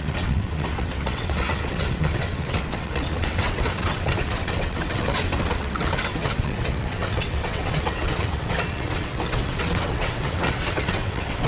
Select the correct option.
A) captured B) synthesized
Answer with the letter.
B